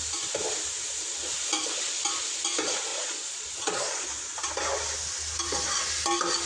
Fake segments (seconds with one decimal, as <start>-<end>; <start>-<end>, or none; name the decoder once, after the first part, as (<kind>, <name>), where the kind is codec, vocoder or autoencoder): 2.9-4.1 (vocoder, Vocos)